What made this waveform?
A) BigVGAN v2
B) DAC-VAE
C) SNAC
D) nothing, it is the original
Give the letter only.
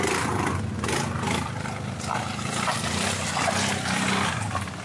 D